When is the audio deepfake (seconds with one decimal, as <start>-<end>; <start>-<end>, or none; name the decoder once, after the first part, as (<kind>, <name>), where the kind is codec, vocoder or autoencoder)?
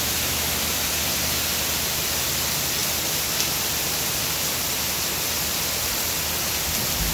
none